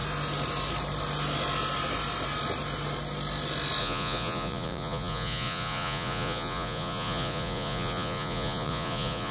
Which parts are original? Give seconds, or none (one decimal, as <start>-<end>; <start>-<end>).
0.0-3.8